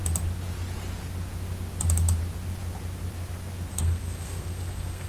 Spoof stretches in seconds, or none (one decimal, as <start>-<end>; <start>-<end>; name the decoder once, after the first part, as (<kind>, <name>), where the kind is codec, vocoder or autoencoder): 3.7-5.1 (codec, SNAC)